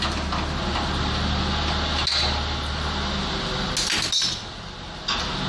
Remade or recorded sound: recorded